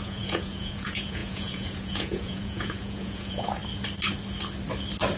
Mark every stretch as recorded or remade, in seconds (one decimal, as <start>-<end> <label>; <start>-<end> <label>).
0.0-3.6 remade; 3.6-5.2 recorded